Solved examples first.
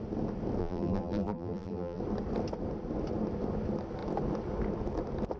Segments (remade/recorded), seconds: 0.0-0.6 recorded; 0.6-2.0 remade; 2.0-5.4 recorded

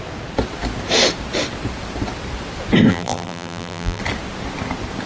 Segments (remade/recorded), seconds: 0.0-2.9 recorded; 2.9-4.0 remade; 4.0-5.1 recorded